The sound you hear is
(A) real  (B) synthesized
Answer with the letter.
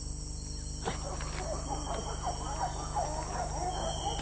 A